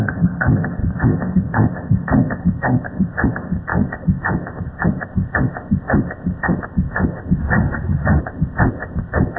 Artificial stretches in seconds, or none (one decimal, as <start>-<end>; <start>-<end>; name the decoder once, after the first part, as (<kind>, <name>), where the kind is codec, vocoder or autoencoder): 0.0-7.4 (codec, ZipCodec); 8.2-9.4